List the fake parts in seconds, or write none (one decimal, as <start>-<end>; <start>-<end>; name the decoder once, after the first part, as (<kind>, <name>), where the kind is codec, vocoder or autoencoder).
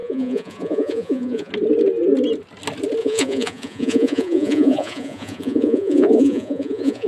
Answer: 0.0-1.5 (vocoder, Vocos); 3.0-7.1